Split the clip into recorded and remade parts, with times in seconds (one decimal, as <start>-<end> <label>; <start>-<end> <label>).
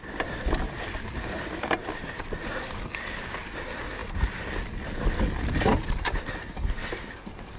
0.0-7.6 recorded